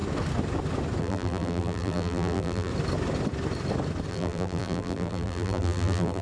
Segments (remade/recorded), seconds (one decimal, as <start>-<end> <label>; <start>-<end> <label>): 0.0-1.0 recorded; 1.0-2.7 remade; 2.7-4.1 recorded; 4.1-6.2 remade